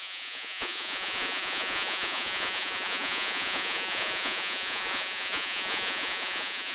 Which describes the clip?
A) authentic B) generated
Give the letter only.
B